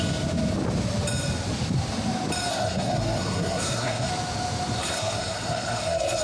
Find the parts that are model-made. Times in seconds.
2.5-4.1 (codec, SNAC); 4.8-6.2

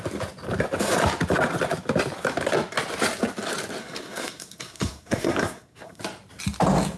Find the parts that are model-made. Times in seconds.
3.8-6.0 (codec, SNAC)

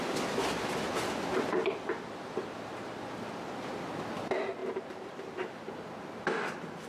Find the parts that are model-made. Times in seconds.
none

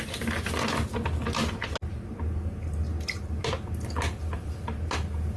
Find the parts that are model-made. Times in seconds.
none

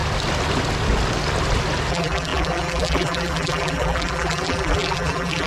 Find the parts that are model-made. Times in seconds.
1.9-5.5 (vocoder, BigVGAN v2)